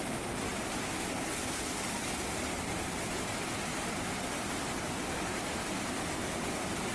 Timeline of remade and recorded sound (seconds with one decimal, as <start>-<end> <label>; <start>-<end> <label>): 0.0-6.9 recorded